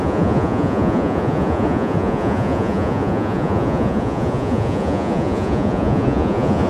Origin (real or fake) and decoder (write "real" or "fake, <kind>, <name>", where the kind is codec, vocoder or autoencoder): fake, vocoder, Vocos